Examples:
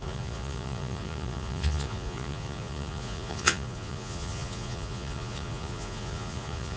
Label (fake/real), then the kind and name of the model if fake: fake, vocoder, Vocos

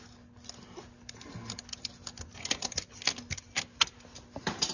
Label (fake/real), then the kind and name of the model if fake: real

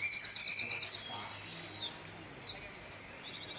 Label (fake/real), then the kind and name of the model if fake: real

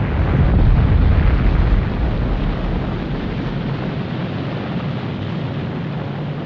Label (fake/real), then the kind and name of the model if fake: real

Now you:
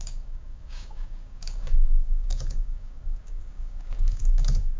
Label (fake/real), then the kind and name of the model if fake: fake, codec, DAC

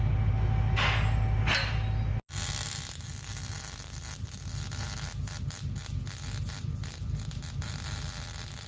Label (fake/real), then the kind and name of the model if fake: real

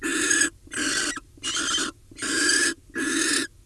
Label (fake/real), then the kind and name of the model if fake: real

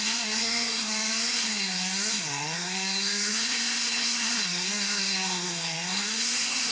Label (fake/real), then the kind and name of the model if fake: fake, codec, SNAC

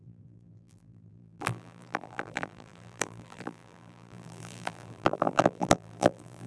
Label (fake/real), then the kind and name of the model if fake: fake, vocoder, BigVGAN v2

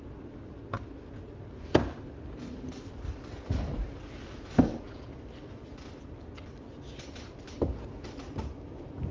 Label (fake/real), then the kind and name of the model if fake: real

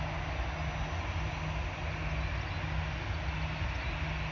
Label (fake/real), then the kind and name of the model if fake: real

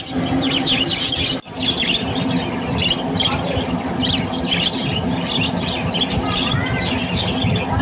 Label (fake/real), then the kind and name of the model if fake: real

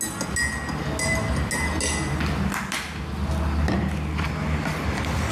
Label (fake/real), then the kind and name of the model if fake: real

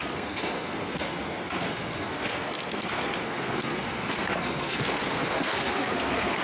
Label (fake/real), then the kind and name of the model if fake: fake, codec, SNAC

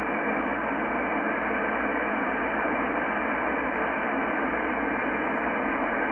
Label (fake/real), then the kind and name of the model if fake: real